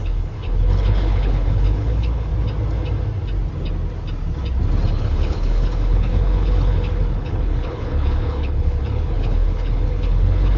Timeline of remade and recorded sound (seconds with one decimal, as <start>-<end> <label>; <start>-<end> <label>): 0.0-2.3 remade; 2.3-4.9 recorded; 4.9-10.6 remade